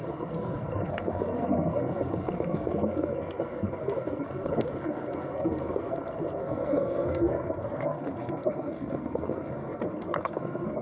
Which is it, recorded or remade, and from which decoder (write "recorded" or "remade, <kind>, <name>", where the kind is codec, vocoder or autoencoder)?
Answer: remade, codec, SNAC